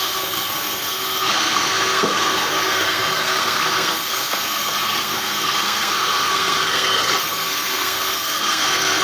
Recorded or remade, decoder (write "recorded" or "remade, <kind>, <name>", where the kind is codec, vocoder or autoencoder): remade, codec, SNAC